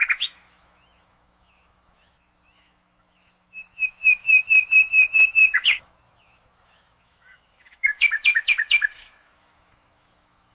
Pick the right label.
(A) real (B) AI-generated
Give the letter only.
B